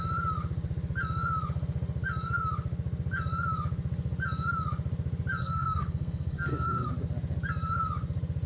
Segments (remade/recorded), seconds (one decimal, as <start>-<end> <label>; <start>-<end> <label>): 0.0-5.4 recorded; 5.4-6.9 remade; 6.9-8.5 recorded